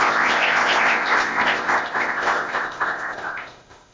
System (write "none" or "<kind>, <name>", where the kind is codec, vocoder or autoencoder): codec, ZipCodec